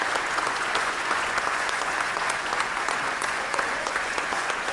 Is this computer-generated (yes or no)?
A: yes